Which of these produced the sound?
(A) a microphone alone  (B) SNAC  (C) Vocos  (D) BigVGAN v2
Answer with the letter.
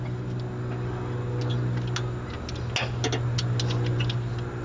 A